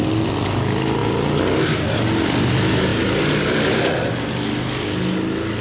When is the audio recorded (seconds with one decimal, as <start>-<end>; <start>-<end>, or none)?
0.0-5.6